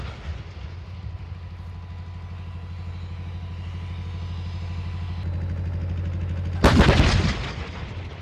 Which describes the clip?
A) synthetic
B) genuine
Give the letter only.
B